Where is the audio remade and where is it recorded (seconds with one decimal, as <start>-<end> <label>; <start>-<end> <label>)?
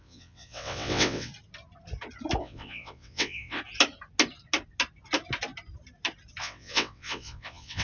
0.0-1.3 remade; 1.3-2.4 recorded; 2.4-3.6 remade; 3.6-6.4 recorded; 6.4-7.8 remade